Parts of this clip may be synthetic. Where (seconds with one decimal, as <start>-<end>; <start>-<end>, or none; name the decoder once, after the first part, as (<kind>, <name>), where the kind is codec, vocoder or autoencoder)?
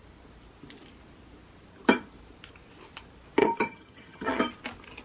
3.4-4.4 (vocoder, HiFi-GAN)